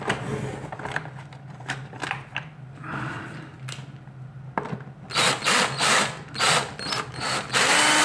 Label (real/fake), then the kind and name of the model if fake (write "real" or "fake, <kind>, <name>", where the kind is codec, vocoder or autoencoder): real